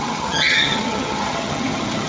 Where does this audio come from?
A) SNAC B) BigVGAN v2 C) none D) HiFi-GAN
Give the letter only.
D